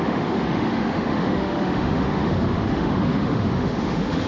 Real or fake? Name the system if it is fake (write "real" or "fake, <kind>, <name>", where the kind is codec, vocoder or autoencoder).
fake, autoencoder, DAC-VAE